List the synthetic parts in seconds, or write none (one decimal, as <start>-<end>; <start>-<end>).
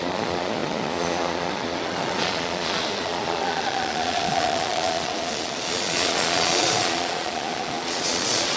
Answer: 0.0-8.6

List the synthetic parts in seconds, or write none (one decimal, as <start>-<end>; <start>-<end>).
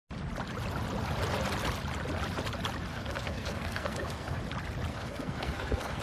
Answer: 2.9-4.4; 4.9-6.0